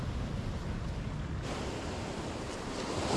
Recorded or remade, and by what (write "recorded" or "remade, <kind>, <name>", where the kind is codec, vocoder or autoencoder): recorded